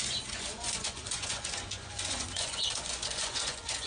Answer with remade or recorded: remade